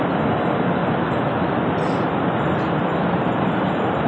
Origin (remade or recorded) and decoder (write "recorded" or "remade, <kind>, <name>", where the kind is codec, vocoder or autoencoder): recorded